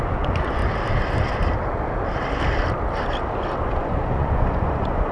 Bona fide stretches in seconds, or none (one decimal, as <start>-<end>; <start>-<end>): 0.6-3.7